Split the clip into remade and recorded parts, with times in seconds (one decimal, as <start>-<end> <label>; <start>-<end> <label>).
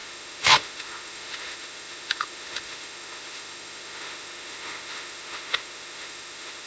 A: 0.0-6.7 remade